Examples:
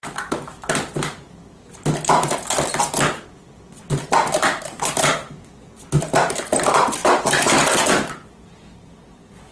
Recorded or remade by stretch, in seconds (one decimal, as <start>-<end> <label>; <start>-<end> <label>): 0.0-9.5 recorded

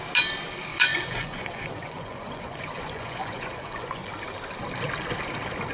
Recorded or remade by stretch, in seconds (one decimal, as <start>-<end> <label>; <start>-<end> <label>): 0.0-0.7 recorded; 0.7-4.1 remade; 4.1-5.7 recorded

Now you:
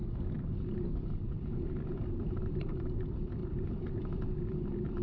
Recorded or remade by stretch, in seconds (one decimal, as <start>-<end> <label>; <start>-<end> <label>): 0.0-2.2 recorded; 2.2-5.0 remade

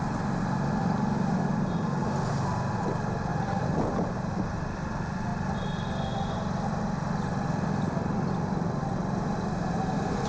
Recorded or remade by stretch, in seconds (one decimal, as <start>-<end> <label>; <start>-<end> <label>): 0.0-3.3 recorded; 3.3-3.9 remade; 3.9-10.3 recorded